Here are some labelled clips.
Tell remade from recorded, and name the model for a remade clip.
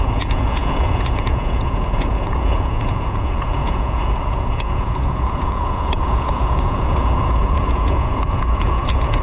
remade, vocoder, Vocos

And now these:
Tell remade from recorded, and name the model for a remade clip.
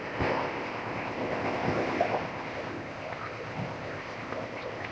remade, codec, ZipCodec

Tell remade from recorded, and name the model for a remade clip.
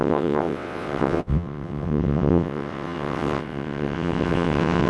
remade, vocoder, WaveNeXt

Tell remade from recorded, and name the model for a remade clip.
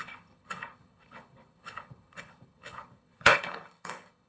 remade, codec, HILCodec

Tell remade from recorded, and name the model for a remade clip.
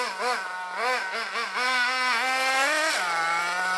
recorded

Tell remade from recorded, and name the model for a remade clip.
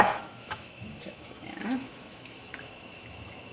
remade, autoencoder, DAC-VAE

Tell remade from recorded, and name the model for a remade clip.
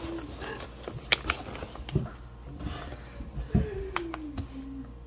recorded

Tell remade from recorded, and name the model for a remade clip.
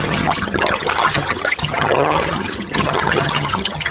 remade, vocoder, HiFi-GAN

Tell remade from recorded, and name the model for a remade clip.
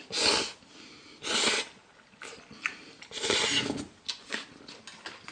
recorded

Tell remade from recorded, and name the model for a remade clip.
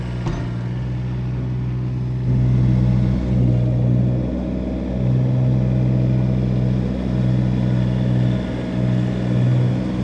recorded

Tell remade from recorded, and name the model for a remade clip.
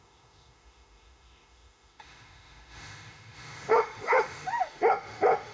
remade, autoencoder, DAC-VAE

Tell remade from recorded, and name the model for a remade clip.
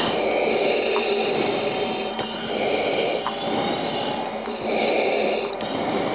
remade, vocoder, BigVGAN v2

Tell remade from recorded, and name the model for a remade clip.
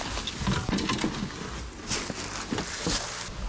recorded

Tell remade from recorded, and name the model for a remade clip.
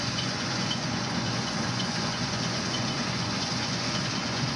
remade, vocoder, Vocos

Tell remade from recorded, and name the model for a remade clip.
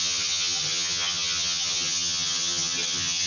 remade, vocoder, HiFi-GAN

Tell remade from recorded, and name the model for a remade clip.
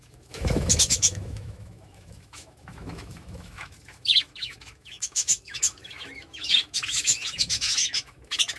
remade, autoencoder, DAC-VAE